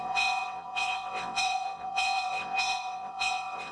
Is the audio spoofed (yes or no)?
yes